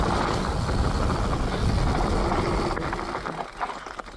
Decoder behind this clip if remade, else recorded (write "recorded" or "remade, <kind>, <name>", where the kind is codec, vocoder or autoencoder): recorded